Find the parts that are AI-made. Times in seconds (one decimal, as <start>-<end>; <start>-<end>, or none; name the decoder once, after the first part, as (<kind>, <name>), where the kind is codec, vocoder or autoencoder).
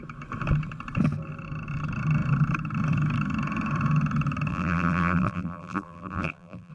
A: 4.5-6.7 (vocoder, BigVGAN v2)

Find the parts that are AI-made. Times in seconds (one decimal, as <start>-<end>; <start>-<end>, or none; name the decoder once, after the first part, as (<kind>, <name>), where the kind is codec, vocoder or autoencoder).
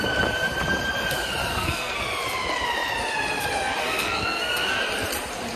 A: 1.5-2.0 (codec, SNAC); 3.8-4.8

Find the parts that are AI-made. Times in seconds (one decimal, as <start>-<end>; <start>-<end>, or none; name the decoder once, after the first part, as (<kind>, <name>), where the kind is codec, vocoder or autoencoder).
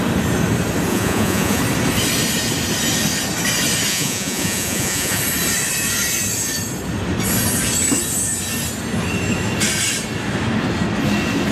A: 0.9-1.6 (vocoder, Vocos); 3.9-5.2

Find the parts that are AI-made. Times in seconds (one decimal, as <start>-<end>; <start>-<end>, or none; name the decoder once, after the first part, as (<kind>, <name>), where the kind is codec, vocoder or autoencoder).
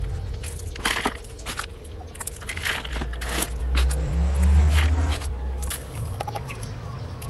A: 5.1-7.3 (codec, DAC)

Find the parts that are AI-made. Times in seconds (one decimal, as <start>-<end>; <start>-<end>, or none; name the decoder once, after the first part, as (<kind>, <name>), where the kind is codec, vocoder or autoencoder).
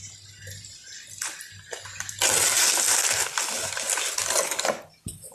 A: none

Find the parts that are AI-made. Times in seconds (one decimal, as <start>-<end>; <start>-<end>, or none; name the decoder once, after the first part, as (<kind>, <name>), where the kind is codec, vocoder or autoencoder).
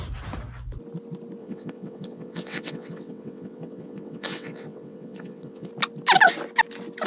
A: 1.4-5.7 (vocoder, WaveNeXt)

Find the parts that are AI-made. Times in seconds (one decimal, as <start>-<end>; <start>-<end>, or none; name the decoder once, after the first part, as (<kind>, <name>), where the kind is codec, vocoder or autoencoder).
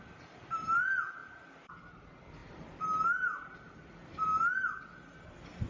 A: 2.4-3.8 (vocoder, BigVGAN v2)